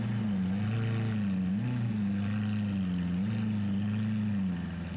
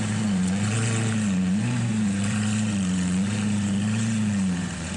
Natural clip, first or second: first